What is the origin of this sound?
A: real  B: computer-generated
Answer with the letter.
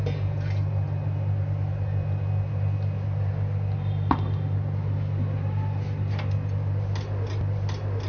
A